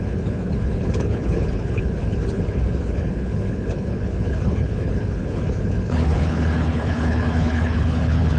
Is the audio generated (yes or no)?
yes